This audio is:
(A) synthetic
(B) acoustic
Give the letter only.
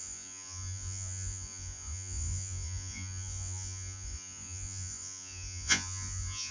A